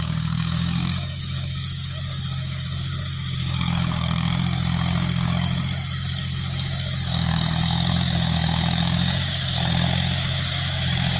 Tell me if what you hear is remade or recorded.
remade